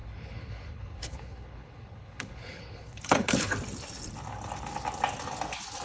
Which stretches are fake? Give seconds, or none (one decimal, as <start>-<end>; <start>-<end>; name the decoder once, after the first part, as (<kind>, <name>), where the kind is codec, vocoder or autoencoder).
0.0-3.5 (codec, HILCodec)